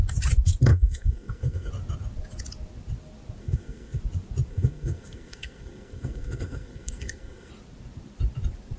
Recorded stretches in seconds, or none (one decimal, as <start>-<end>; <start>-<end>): 0.0-0.7; 1.7-3.4; 4.0-4.5; 7.5-8.8

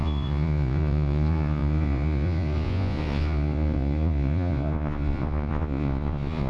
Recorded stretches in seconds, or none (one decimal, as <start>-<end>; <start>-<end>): none

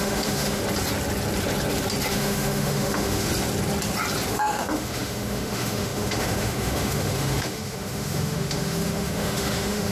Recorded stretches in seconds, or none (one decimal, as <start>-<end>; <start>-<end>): 0.6-2.1; 3.3-4.3